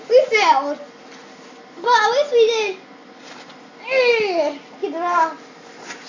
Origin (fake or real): real